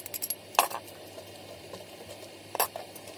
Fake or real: real